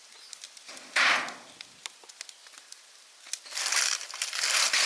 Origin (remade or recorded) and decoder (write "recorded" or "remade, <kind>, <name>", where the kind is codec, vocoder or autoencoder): remade, vocoder, BigVGAN v2